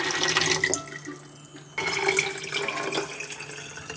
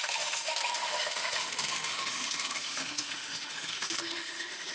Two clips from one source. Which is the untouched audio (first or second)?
first